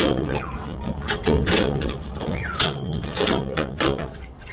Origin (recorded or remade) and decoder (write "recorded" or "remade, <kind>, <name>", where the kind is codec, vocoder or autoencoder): remade, vocoder, WaveNeXt